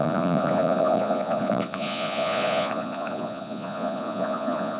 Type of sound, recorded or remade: remade